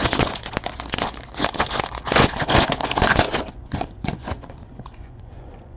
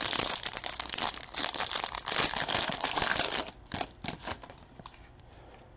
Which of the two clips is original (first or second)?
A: second